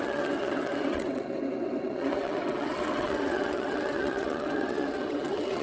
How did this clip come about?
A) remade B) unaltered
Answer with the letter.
A